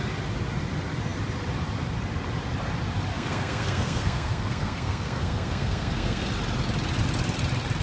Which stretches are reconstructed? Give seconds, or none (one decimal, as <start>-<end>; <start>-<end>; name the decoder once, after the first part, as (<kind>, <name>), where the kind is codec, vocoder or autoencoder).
3.1-6.3 (codec, SNAC)